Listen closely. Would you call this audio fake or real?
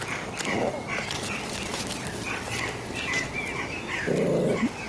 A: real